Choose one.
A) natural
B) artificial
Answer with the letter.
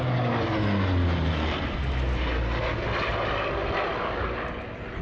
A